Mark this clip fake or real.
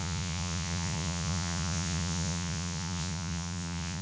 fake